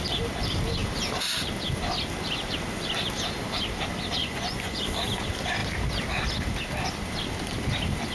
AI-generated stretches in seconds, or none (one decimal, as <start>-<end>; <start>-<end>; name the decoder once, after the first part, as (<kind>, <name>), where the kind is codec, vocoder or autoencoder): 4.2-4.8 (vocoder, Vocos)